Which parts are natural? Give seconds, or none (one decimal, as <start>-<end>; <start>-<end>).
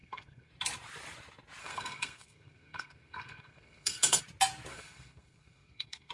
0.5-1.6; 4.2-4.7